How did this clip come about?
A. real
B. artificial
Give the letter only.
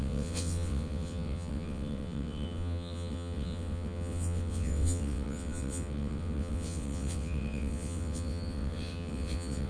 B